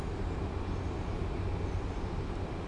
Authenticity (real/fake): real